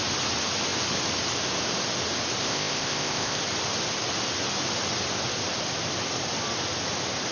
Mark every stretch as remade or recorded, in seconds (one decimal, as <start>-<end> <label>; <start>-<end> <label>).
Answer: 0.0-2.4 recorded; 2.4-3.4 remade; 3.4-7.3 recorded